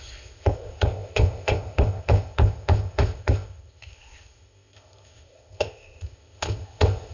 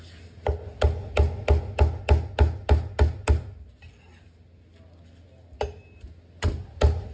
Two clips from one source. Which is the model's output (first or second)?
first